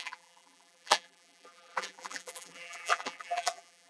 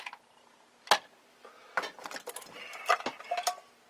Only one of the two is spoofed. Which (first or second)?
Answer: first